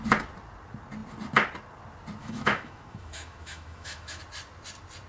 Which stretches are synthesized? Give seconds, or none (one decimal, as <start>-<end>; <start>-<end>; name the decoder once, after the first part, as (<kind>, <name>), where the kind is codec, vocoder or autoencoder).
2.2-4.2 (autoencoder, DAC-VAE)

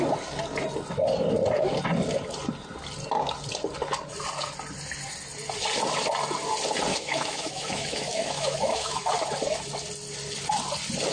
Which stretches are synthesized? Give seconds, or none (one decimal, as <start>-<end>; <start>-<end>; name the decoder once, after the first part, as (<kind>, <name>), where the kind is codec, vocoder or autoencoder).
6.9-9.1 (autoencoder, DAC-VAE)

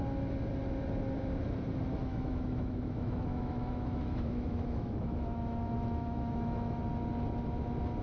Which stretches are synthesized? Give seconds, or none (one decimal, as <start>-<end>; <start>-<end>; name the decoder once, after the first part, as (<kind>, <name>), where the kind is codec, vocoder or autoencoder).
2.0-6.8 (autoencoder, DAC-VAE)

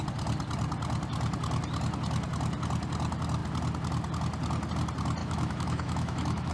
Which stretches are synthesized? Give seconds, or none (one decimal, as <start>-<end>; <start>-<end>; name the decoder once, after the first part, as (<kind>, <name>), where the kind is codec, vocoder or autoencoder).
5.2-6.5 (autoencoder, DAC-VAE)

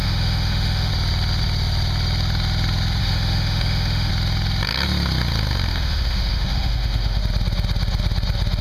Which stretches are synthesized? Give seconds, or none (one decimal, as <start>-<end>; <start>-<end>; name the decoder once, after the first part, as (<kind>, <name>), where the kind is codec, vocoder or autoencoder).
0.0-0.9 (autoencoder, DAC-VAE); 3.0-4.1; 5.7-7.2

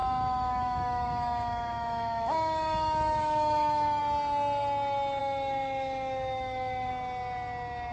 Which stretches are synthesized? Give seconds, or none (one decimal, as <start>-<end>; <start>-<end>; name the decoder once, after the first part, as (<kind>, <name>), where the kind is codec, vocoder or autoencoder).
0.0-4.0 (autoencoder, DAC-VAE); 5.2-6.9

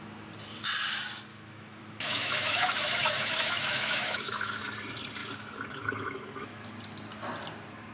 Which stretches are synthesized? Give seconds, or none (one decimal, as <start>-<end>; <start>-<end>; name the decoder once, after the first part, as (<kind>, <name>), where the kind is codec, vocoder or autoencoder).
1.3-4.6 (autoencoder, DAC-VAE); 5.2-6.7